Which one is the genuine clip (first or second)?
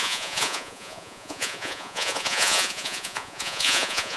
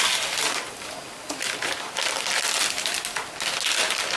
second